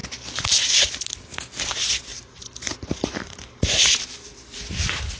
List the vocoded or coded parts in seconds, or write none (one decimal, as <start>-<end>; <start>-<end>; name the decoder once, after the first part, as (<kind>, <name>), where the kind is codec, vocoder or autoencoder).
2.1-4.3 (vocoder, BigVGAN v2)